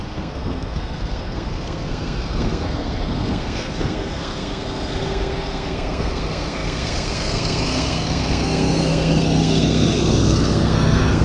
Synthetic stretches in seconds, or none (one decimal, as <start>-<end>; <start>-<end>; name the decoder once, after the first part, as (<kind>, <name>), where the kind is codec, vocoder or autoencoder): 0.0-11.2 (codec, SNAC)